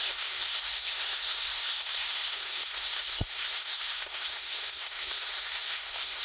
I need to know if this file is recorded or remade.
remade